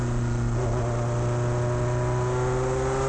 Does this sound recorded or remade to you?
recorded